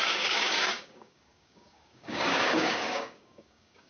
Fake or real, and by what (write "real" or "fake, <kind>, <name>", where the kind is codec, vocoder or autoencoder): fake, codec, DAC